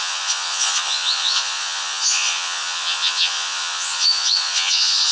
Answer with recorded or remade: remade